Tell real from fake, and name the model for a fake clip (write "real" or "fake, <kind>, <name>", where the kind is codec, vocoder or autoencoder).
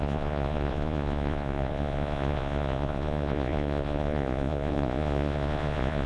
fake, vocoder, Vocos